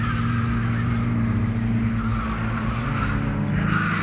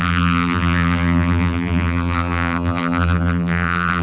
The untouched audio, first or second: first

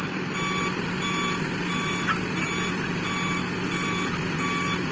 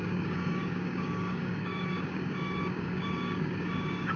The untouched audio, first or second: first